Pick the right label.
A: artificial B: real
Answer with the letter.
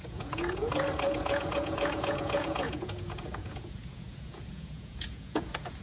A